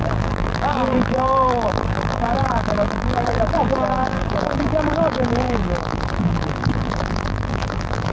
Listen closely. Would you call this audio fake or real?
fake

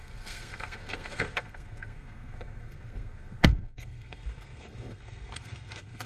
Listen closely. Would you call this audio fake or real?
fake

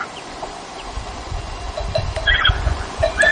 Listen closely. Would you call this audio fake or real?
fake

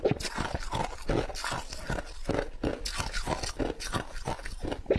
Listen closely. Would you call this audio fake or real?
real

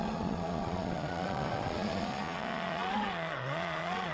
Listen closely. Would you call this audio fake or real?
fake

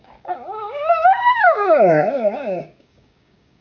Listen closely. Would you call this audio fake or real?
fake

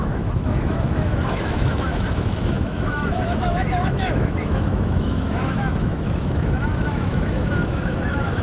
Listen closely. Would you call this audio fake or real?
fake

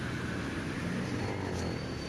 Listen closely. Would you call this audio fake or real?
real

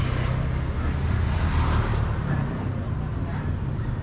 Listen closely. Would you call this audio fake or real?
real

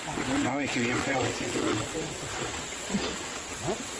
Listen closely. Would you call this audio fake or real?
fake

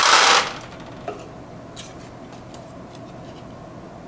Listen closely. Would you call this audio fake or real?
real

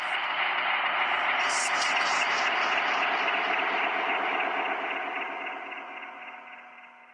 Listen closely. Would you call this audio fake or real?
real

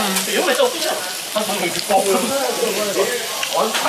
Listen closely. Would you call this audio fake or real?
real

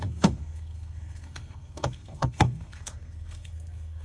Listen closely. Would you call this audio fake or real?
fake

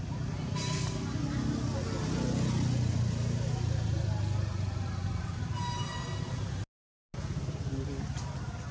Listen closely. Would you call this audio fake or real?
real